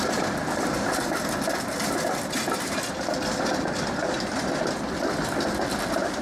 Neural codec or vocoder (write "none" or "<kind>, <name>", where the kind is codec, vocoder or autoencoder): none